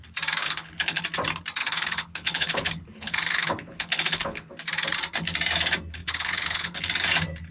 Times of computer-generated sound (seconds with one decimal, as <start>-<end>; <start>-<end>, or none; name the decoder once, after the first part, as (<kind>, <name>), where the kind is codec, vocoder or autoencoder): 0.4-1.0 (codec, HILCodec); 1.6-4.5; 6.0-6.8